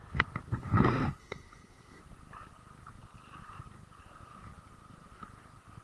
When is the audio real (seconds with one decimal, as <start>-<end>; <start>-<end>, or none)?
0.0-1.2; 2.0-5.8